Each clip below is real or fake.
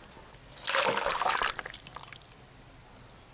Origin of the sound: real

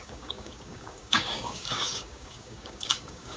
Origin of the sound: fake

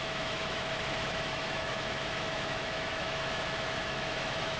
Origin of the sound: fake